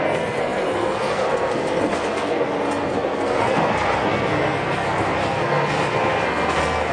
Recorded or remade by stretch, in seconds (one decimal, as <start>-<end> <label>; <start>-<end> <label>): 0.0-6.9 remade